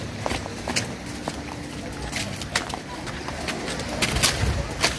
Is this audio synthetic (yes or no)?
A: no